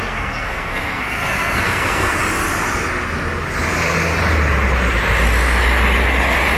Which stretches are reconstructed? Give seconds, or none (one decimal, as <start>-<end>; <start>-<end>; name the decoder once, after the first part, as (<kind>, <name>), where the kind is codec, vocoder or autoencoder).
0.0-2.2 (codec, SNAC)